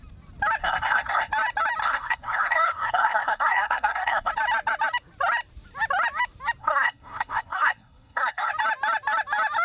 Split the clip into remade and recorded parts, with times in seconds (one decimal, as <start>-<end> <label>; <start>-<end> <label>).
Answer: 0.0-0.6 recorded; 0.6-1.3 remade; 1.3-1.8 recorded; 1.8-4.3 remade; 4.3-6.6 recorded; 6.6-8.5 remade; 8.5-9.6 recorded